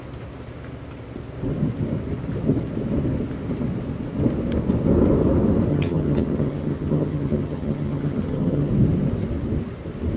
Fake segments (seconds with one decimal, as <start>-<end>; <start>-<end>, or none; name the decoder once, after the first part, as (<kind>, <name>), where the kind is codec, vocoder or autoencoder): 5.7-8.7 (vocoder, HiFi-GAN)